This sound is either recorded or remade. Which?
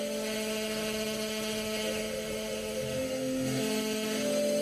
remade